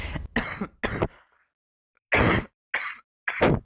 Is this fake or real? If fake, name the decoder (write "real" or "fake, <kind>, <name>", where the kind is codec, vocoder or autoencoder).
real